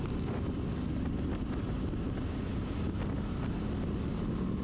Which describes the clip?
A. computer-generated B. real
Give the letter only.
B